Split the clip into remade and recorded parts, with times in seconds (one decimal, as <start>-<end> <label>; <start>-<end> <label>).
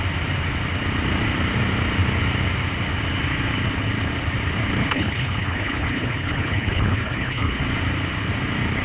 0.0-4.8 recorded; 4.8-7.6 remade; 7.6-8.8 recorded